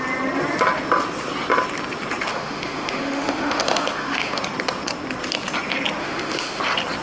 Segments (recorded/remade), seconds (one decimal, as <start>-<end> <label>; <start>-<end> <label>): 0.0-2.3 recorded; 2.3-4.4 remade; 4.4-6.0 recorded; 6.0-6.6 remade; 6.6-7.0 recorded